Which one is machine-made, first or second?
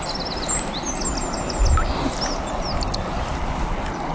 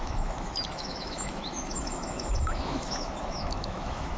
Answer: second